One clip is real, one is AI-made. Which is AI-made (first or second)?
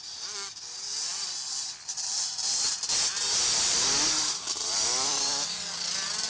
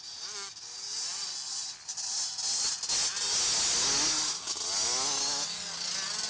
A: first